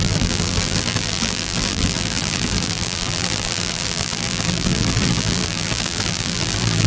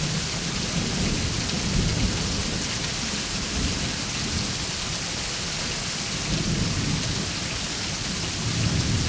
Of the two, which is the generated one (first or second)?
first